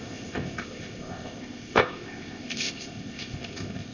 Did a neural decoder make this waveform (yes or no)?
yes